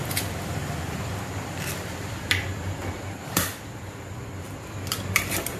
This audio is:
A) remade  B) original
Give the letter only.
A